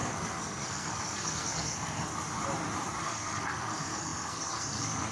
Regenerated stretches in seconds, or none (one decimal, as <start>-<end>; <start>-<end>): 0.0-2.1; 3.0-5.1